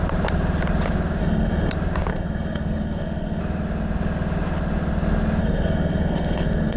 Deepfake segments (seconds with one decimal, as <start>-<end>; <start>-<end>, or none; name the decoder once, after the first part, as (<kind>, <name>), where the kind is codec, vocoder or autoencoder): 1.2-1.7 (codec, SNAC); 2.1-3.4; 5.4-6.8